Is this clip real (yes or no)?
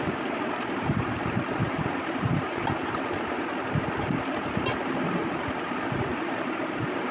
no